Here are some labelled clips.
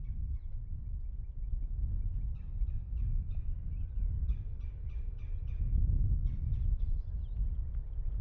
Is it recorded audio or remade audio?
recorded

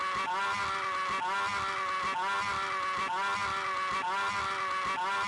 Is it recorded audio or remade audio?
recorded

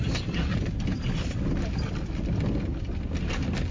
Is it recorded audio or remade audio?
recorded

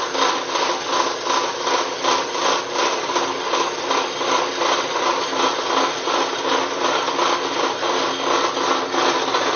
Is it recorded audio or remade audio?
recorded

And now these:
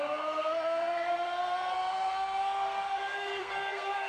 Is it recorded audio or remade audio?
remade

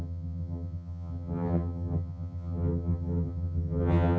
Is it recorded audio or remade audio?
remade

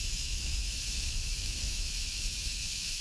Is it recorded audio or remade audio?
remade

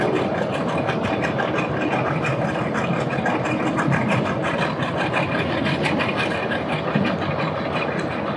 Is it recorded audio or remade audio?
recorded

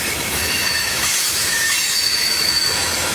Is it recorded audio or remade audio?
remade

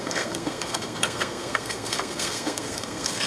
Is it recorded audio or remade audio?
remade